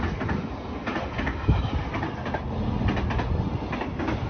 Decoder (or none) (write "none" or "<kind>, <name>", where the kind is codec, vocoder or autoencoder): none